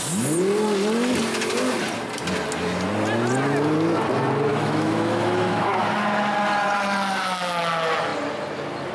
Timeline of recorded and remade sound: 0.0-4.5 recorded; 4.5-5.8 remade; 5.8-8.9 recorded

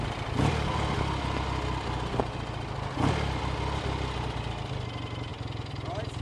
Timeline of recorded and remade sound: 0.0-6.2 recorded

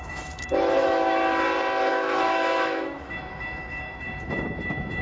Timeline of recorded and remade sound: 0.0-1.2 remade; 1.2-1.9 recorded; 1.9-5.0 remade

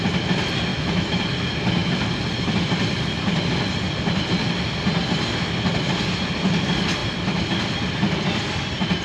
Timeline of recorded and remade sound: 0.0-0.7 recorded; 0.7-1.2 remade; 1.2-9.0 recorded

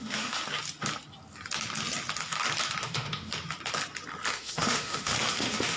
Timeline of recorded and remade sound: 0.0-0.4 remade; 0.4-2.8 recorded; 2.8-3.3 remade; 3.3-4.3 recorded; 4.3-5.8 remade